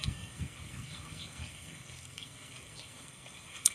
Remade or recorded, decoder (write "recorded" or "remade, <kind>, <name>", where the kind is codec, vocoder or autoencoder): remade, codec, SNAC